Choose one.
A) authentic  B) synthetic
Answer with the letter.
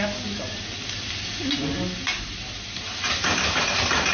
A